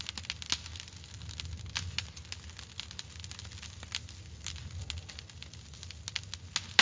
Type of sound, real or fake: real